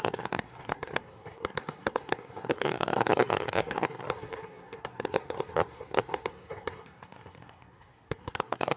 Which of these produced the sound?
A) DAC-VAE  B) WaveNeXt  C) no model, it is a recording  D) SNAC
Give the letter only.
D